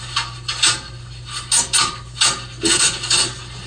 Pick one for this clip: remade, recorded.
recorded